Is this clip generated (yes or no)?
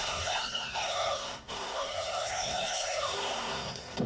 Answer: yes